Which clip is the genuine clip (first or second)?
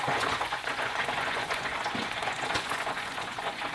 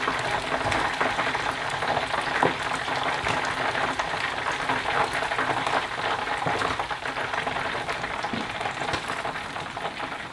second